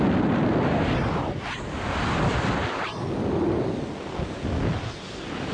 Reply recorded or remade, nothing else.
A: recorded